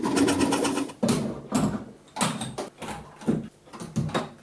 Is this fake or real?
real